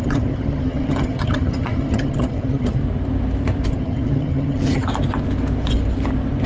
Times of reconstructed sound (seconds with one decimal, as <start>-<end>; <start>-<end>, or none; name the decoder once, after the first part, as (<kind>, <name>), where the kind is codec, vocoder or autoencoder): 0.0-2.8 (vocoder, HiFi-GAN); 3.7-4.9